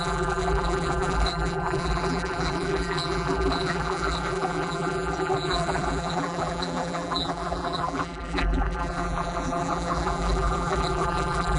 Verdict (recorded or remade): remade